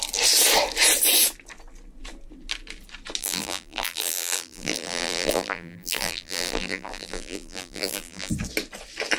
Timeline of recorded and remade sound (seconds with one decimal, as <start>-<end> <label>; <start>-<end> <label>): 0.0-3.2 recorded; 3.2-8.3 remade; 8.3-9.2 recorded